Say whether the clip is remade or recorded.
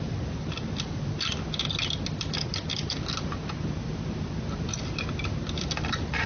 recorded